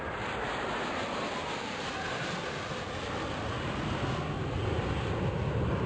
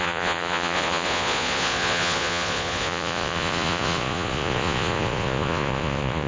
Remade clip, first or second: second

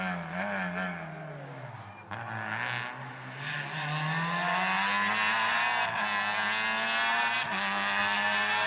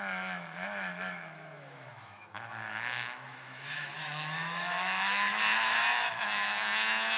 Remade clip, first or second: second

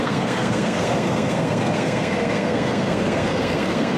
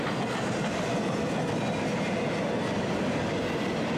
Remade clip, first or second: first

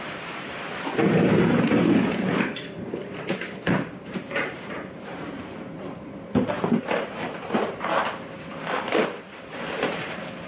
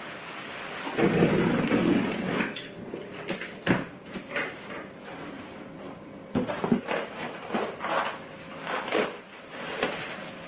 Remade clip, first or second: first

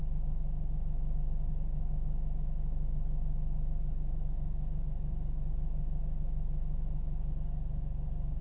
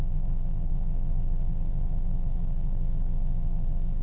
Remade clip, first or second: second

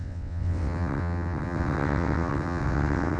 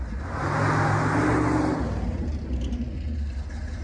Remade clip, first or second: first